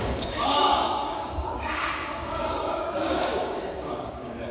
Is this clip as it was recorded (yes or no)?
no